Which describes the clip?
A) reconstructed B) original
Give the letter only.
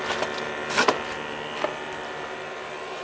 B